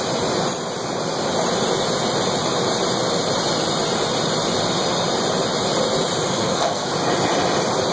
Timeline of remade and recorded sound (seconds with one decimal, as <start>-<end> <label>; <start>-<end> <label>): 0.0-6.3 recorded; 6.3-6.9 remade; 6.9-7.9 recorded